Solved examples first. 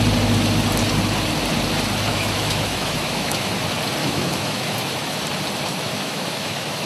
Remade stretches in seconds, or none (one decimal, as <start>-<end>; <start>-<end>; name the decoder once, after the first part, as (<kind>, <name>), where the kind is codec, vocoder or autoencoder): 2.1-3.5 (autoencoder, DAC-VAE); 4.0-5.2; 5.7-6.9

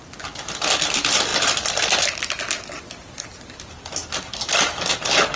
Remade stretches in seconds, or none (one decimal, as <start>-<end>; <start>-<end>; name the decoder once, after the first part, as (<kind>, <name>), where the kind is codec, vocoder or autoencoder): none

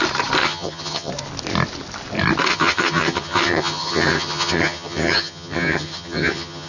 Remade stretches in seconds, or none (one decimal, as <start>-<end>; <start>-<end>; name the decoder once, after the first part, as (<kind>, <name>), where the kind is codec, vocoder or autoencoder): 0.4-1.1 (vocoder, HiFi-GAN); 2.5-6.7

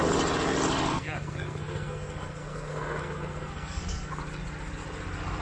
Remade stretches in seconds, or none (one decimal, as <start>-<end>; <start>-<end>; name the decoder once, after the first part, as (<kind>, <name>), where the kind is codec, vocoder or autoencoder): 0.9-4.1 (codec, SNAC)

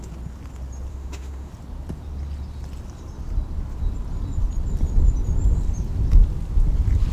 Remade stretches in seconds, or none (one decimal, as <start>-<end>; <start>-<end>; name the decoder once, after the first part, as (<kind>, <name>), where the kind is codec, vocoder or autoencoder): 0.9-1.5 (autoencoder, DAC-VAE)

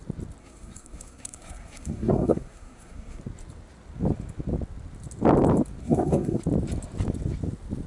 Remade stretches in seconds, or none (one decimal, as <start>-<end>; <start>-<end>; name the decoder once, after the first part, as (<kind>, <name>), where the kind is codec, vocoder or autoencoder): 0.4-3.2 (codec, SNAC); 5.8-6.4

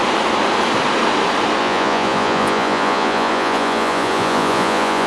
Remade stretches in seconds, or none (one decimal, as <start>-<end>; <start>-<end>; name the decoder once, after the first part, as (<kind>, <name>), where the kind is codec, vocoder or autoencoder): 1.6-5.1 (vocoder, Vocos)

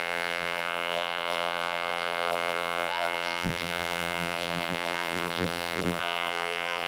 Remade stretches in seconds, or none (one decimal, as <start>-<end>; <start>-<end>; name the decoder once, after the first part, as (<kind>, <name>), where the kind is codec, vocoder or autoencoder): 0.0-6.9 (vocoder, BigVGAN v2)